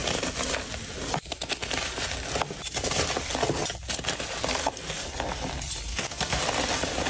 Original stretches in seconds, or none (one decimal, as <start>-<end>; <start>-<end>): 0.0-4.6; 5.1-5.9; 6.4-7.1